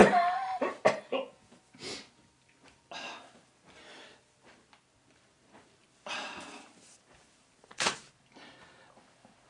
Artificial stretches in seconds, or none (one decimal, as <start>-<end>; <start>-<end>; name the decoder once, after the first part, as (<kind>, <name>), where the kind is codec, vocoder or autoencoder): 0.0-0.9 (vocoder, BigVGAN v2); 5.8-8.6